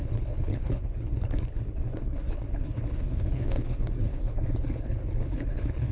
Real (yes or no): no